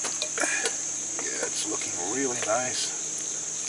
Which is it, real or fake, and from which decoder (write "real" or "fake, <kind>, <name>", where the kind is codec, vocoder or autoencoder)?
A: fake, vocoder, BigVGAN v2